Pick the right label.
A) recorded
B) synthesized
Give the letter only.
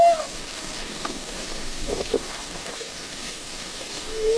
B